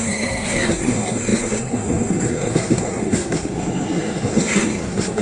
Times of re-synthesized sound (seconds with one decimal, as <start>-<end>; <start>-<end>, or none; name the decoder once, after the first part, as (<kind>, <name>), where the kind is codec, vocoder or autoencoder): 0.0-5.2 (codec, SNAC)